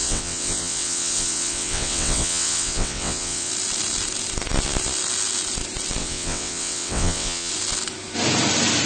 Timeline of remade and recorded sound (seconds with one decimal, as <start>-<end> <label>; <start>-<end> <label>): 0.0-3.5 remade; 3.5-6.0 recorded; 6.0-7.5 remade; 7.5-8.9 recorded